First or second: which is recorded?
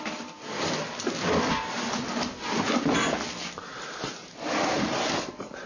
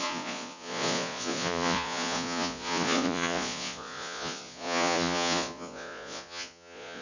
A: first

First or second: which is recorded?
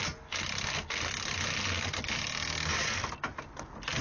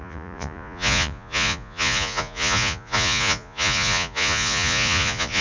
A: first